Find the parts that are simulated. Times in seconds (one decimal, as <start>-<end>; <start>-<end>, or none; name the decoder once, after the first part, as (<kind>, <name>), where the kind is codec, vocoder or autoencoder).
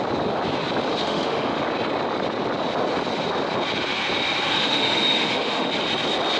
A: 1.0-1.6 (autoencoder, DAC-VAE); 4.6-5.7